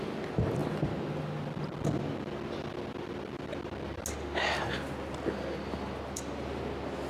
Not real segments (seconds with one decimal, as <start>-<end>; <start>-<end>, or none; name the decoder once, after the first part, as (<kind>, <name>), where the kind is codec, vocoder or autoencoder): none